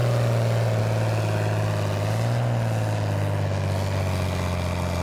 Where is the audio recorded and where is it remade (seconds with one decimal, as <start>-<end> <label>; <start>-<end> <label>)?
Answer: 0.0-5.0 recorded